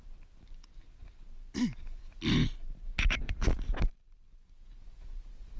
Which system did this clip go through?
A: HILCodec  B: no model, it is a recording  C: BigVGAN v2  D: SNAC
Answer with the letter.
B